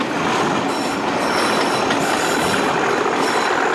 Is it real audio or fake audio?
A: real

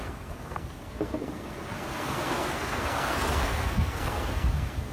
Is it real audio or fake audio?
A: fake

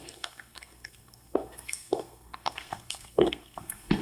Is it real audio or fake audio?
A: fake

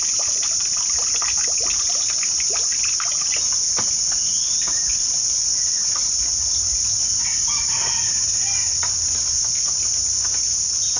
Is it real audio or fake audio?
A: real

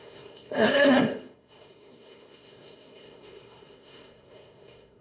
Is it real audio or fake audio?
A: fake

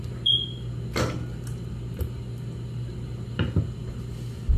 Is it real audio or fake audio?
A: real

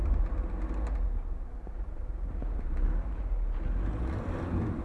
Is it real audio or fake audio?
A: real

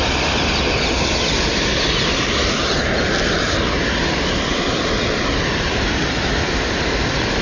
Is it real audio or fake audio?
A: real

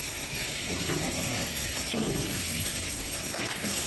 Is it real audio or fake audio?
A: fake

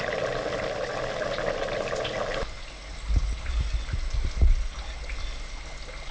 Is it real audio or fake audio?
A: real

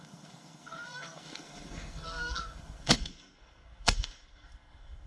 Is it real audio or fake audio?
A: fake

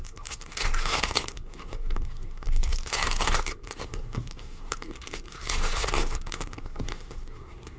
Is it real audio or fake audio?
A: fake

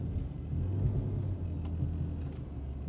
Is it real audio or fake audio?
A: real